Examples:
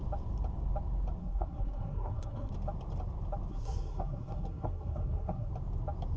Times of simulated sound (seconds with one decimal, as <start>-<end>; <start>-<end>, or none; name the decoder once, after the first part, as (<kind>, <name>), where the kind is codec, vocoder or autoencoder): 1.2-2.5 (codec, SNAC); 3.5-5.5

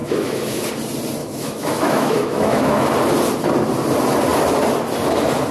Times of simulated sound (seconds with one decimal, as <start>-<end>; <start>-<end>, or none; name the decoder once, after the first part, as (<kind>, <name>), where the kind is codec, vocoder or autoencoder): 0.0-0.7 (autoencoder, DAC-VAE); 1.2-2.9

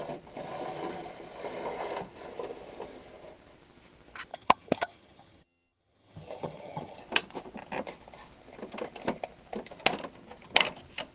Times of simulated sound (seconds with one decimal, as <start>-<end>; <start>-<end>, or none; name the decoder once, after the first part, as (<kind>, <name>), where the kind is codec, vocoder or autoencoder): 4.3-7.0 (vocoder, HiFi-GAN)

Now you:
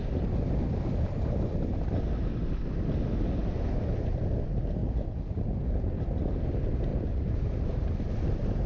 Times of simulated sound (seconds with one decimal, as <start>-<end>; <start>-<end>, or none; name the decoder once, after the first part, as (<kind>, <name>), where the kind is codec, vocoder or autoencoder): 4.8-5.9 (vocoder, BigVGAN v2); 6.9-7.9

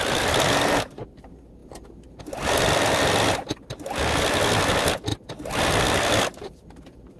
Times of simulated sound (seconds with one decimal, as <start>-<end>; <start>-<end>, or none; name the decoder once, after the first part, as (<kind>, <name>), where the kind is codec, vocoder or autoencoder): none